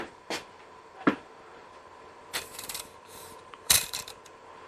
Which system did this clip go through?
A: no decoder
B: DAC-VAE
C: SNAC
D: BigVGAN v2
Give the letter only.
D